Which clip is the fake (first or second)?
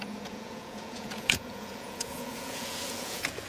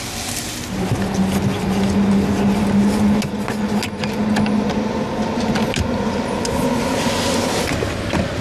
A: first